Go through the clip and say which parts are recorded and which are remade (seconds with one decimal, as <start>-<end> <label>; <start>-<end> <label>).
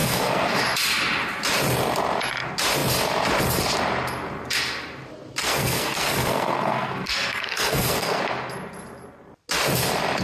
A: 0.0-0.6 remade; 0.6-5.4 recorded; 5.4-8.2 remade; 8.2-10.2 recorded